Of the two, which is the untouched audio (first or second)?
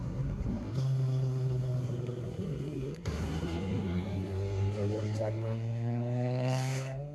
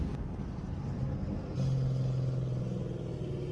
second